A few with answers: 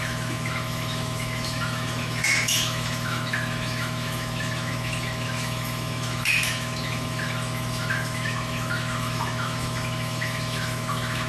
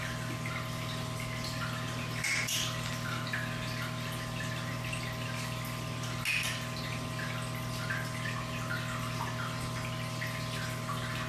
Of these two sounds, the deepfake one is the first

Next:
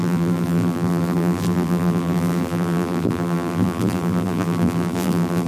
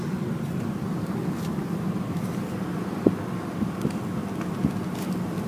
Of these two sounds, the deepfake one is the first